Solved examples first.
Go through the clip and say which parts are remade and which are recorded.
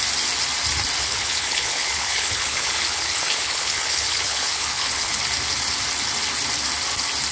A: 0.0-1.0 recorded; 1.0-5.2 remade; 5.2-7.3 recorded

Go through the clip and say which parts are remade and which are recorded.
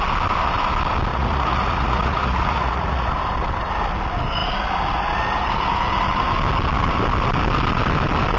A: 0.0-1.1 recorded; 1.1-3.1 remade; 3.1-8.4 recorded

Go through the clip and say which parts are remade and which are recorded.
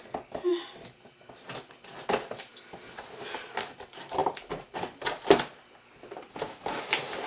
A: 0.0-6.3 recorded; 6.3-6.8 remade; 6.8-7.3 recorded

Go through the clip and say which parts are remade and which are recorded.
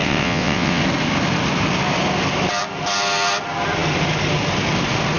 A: 0.0-0.8 remade; 0.8-5.2 recorded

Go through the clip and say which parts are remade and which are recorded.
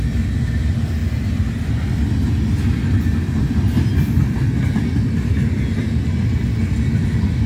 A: 0.0-7.5 recorded